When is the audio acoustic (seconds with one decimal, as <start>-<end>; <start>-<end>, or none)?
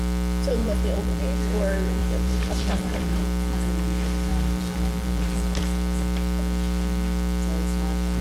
0.0-0.6; 1.2-2.0; 3.2-4.3; 5.6-8.2